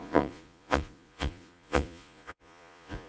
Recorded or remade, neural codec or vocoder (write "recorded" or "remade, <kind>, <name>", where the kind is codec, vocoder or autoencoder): remade, vocoder, Vocos